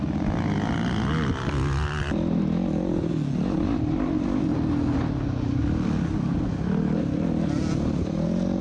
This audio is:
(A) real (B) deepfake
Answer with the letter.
A